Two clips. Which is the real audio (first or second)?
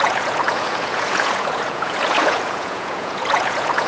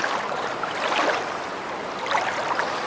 second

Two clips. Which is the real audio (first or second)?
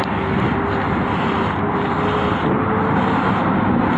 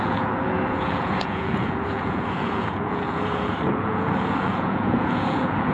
first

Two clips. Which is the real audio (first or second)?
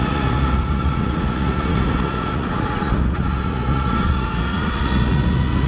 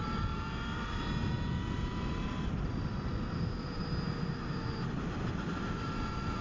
second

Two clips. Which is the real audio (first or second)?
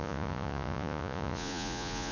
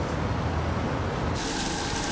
second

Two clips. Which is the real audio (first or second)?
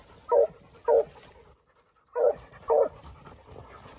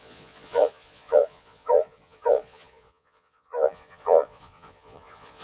first